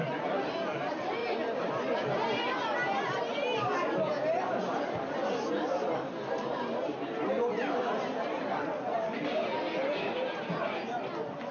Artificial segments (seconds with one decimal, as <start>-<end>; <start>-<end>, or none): none